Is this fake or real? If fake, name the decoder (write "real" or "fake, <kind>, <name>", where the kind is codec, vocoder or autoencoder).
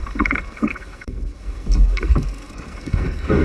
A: fake, codec, SNAC